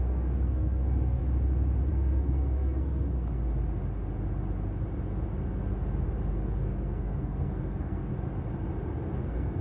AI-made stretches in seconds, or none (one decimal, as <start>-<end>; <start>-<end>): 0.0-1.2; 1.9-3.4; 6.3-8.1; 9.2-9.6